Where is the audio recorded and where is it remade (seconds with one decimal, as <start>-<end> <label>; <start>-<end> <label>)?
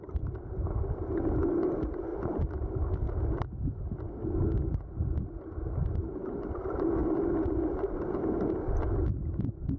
0.0-2.1 recorded; 2.1-3.0 remade; 3.0-9.8 recorded